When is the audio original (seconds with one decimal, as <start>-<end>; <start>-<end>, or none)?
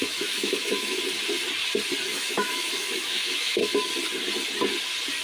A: 1.0-2.1; 3.9-5.2